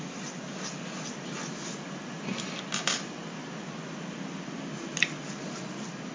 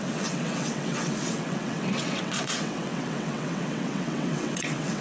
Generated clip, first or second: second